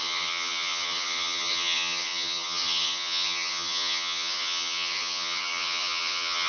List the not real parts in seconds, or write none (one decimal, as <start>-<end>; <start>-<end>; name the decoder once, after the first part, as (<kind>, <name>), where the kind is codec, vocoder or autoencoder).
0.0-6.5 (vocoder, HiFi-GAN)